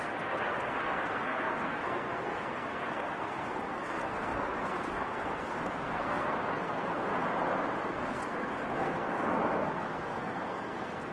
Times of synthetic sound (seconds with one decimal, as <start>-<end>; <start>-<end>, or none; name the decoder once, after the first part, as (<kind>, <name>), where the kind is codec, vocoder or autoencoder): 0.0-7.1 (codec, SNAC); 7.8-11.1